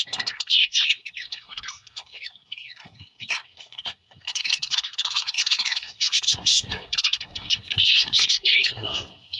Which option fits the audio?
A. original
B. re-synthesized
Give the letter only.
B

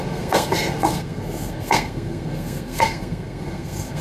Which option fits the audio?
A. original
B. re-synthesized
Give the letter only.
B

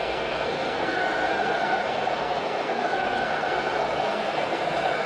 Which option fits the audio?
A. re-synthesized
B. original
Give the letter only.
A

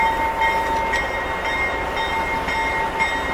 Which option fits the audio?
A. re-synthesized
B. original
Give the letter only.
B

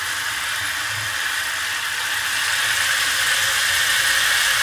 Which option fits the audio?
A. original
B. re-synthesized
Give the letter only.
A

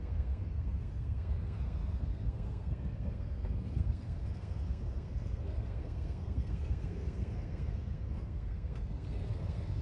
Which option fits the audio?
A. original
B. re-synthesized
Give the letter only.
B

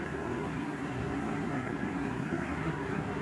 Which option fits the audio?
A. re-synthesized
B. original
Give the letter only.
A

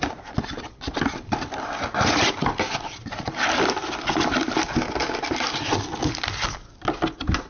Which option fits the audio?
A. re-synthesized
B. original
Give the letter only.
B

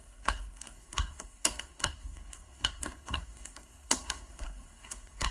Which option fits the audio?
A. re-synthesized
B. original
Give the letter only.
A